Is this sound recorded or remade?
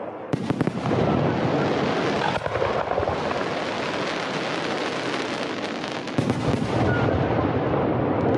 recorded